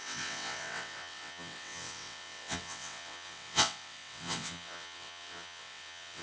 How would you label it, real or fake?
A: fake